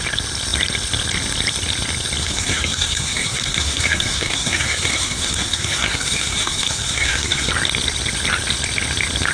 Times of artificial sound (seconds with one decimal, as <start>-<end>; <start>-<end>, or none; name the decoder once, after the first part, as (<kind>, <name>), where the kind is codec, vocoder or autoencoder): 2.2-7.5 (codec, SNAC)